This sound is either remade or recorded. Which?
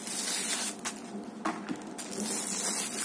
recorded